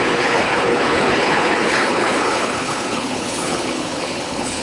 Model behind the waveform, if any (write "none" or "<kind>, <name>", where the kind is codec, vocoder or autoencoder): codec, HILCodec